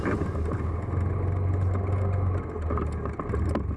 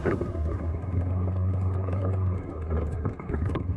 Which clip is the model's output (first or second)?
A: second